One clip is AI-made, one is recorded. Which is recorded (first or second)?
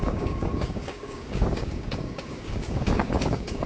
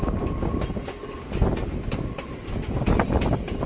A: second